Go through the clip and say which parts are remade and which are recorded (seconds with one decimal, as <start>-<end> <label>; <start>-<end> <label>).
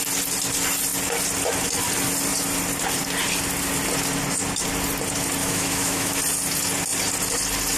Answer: 0.0-5.4 recorded; 5.4-6.2 remade; 6.2-7.8 recorded